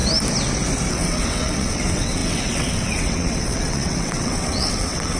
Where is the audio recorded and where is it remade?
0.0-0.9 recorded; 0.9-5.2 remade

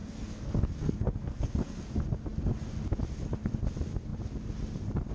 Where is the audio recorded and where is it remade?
0.0-1.8 remade; 1.8-5.1 recorded

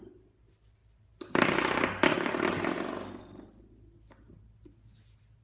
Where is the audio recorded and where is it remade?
0.0-5.4 recorded

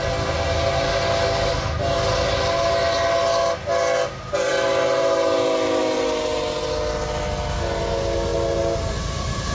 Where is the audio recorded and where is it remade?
0.0-9.5 recorded

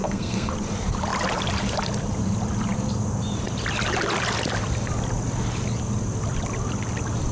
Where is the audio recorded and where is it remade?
0.0-0.5 remade; 0.5-7.3 recorded

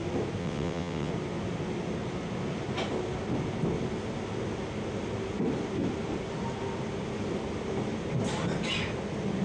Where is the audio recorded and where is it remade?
0.0-0.4 recorded; 0.4-1.1 remade; 1.1-9.4 recorded

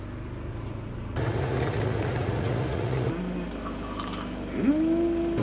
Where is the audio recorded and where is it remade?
0.0-0.5 recorded; 0.5-3.1 remade; 3.1-5.4 recorded

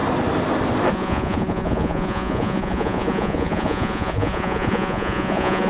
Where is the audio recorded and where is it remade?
0.0-0.9 recorded; 0.9-5.7 remade